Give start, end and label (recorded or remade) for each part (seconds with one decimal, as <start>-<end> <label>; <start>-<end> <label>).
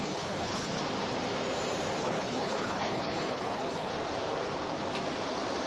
0.0-0.8 remade; 0.8-2.0 recorded; 2.0-3.9 remade; 3.9-5.7 recorded